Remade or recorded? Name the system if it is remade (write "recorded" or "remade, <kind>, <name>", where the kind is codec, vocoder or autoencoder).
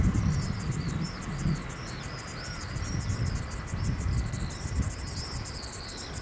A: recorded